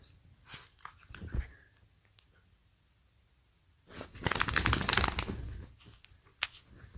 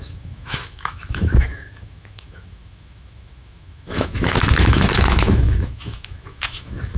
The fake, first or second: second